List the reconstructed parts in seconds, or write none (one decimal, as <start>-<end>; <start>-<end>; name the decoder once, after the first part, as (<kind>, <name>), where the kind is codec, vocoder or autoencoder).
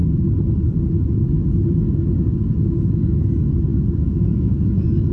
3.7-5.1 (autoencoder, DAC-VAE)